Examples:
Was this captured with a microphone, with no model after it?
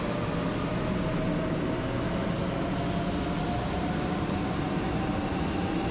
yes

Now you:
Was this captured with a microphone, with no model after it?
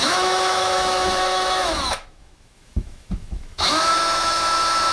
no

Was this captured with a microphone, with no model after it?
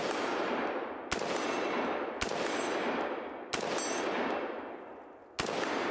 yes